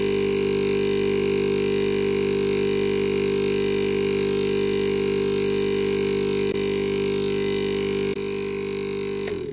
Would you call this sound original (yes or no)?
yes